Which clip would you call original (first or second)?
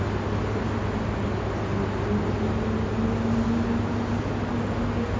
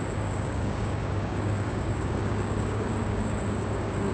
first